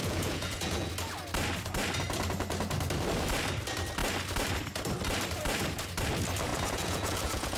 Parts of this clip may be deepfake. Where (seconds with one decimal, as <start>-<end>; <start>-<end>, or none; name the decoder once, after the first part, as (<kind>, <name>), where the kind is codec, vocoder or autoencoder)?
0.0-0.9 (vocoder, Vocos); 6.5-7.6